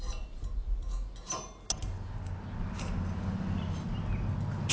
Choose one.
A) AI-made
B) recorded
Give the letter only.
B